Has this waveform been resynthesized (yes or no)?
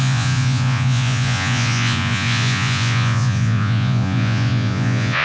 yes